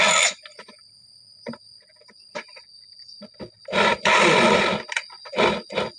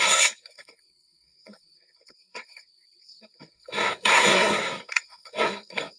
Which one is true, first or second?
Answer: first